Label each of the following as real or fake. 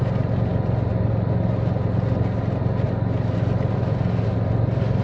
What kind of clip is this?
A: real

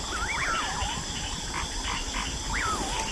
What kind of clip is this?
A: real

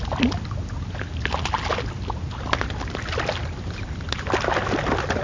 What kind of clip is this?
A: real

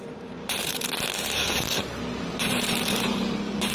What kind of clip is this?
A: fake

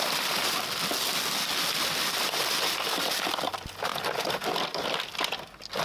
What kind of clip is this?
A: real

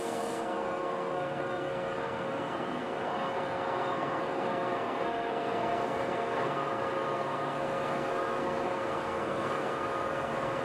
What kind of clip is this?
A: fake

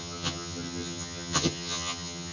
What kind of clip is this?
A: fake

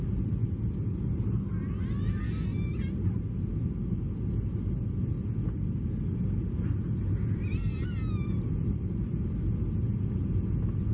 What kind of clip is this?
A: real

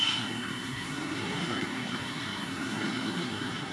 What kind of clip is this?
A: fake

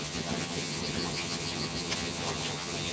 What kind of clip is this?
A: fake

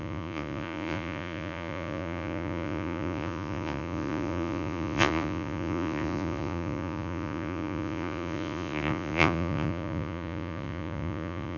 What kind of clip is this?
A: fake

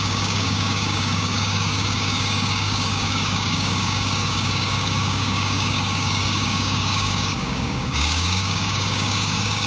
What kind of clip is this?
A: fake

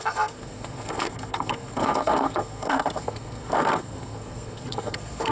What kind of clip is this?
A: fake